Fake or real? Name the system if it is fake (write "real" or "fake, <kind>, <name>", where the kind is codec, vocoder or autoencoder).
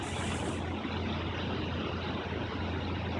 real